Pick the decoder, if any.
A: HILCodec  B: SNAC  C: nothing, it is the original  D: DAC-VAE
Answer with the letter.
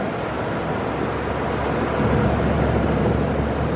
C